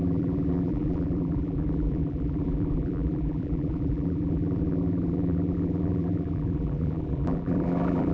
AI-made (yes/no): yes